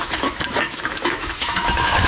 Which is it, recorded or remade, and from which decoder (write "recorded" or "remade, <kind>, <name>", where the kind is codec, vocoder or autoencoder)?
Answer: remade, autoencoder, DAC-VAE